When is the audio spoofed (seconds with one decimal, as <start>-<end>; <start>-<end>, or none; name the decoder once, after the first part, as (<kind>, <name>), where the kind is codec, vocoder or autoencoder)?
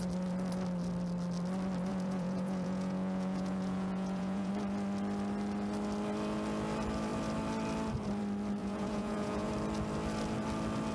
1.9-4.5 (vocoder, Vocos); 8.6-9.5